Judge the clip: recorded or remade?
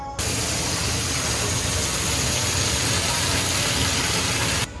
recorded